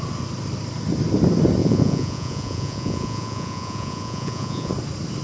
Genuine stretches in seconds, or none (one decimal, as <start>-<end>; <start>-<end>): 0.0-1.6; 4.7-5.2